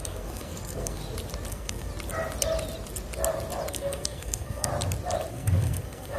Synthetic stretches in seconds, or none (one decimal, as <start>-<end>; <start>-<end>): 0.0-1.0; 1.5-1.9; 3.7-4.7; 5.3-6.2